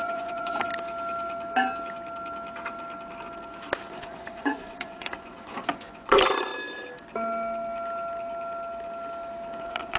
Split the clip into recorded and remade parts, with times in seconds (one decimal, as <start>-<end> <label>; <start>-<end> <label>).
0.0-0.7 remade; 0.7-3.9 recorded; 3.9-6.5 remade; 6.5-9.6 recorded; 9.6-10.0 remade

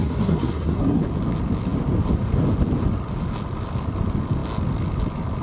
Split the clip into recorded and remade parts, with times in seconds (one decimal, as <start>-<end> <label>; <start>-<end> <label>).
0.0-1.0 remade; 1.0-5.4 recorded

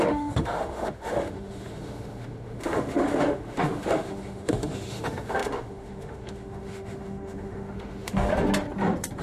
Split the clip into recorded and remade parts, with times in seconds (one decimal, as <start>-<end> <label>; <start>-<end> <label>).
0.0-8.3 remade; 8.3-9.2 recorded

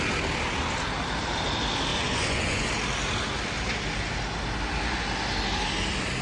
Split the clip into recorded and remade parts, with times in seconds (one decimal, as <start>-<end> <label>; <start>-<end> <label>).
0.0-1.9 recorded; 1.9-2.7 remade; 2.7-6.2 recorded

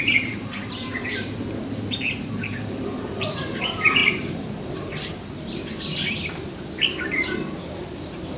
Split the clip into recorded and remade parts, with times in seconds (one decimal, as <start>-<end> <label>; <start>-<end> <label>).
0.0-0.9 remade; 0.9-2.4 recorded; 2.4-5.1 remade; 5.1-7.8 recorded; 7.8-8.4 remade